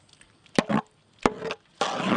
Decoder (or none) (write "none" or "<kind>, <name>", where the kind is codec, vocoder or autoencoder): none